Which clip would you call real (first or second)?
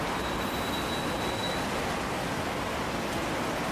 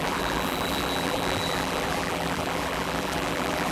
first